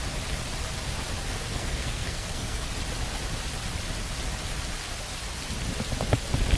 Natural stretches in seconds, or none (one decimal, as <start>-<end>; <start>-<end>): 0.0-1.5; 2.7-6.6